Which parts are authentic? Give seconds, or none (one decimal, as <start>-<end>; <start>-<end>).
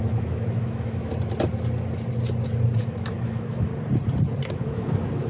1.1-2.8; 3.7-4.5